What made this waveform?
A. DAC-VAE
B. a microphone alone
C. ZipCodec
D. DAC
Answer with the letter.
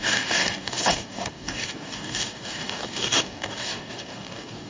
D